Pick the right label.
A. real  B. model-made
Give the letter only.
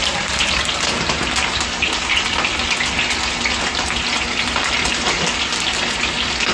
A